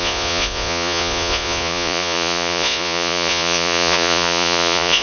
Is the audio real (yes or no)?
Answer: no